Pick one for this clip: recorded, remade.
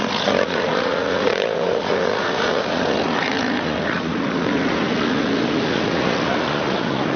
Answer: remade